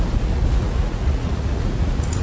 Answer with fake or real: fake